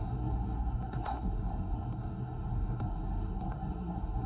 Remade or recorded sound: remade